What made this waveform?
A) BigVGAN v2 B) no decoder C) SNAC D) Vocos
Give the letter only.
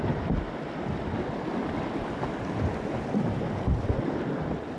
B